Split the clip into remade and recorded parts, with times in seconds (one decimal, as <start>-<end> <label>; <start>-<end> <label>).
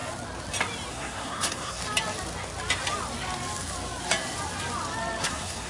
0.0-0.9 recorded; 0.9-1.8 remade; 1.8-5.2 recorded; 5.2-5.7 remade